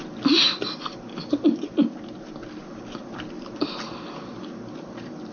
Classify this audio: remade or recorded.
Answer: recorded